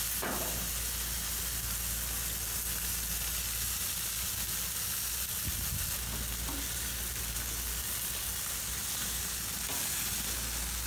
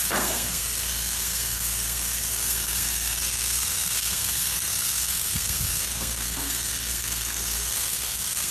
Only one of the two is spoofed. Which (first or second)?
second